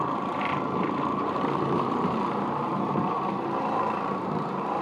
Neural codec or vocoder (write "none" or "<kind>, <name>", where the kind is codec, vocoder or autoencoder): vocoder, BigVGAN v2